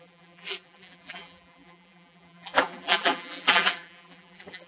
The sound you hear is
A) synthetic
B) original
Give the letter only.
A